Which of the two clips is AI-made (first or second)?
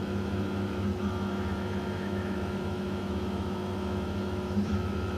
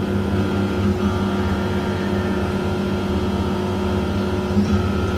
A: first